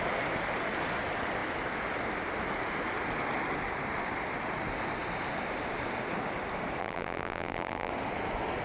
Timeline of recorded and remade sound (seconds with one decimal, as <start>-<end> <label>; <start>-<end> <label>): 0.0-6.8 recorded; 6.8-7.9 remade; 7.9-8.6 recorded